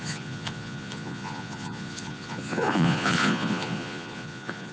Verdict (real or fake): fake